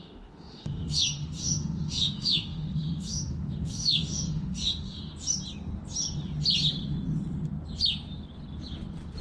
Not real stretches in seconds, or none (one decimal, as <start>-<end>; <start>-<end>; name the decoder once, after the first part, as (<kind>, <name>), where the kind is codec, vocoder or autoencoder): 0.0-5.0 (autoencoder, DAC-VAE)